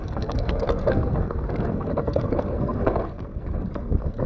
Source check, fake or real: fake